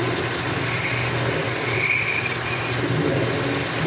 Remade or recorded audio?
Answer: recorded